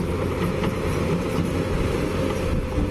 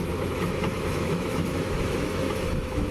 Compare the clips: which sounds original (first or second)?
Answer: first